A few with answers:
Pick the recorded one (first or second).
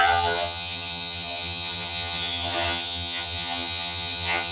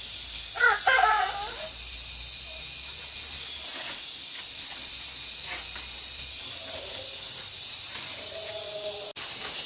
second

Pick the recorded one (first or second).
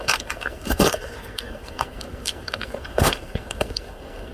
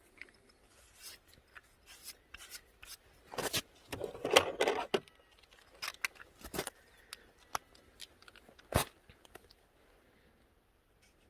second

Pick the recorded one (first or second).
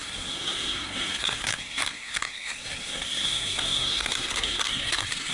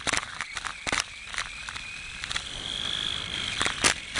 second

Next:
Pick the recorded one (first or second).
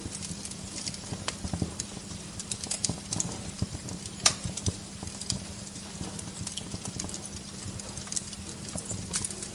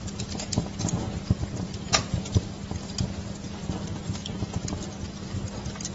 second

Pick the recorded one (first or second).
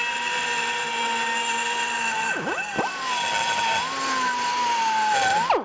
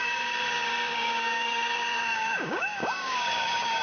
first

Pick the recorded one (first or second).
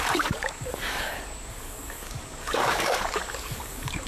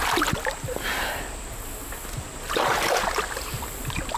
second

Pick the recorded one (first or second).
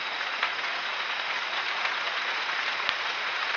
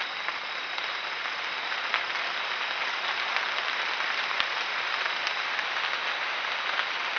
second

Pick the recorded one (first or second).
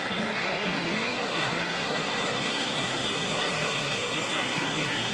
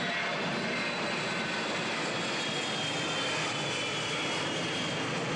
second